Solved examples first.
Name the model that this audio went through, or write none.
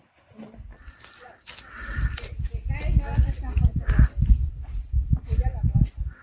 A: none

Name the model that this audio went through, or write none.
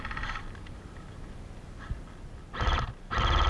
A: none